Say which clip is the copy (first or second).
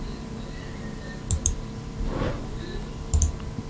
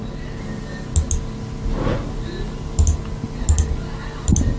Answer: first